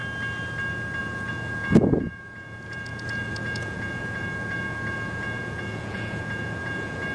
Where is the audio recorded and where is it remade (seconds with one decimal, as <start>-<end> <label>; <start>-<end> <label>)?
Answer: 0.0-1.0 recorded; 1.0-7.1 remade